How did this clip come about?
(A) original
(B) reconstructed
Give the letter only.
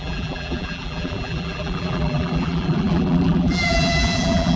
B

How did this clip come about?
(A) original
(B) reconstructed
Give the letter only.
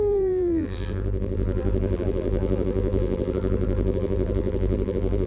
B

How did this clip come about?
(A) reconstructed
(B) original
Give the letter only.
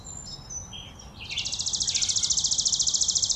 B